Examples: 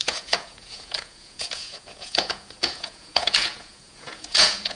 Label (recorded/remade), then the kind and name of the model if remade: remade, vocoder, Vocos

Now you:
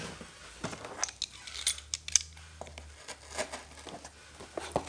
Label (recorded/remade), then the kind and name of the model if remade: recorded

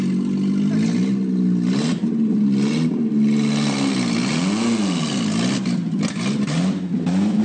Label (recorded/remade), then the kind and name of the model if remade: recorded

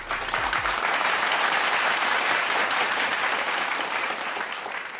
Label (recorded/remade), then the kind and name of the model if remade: remade, vocoder, BigVGAN v2